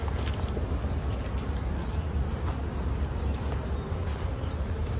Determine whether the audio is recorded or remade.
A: recorded